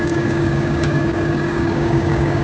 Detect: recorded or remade remade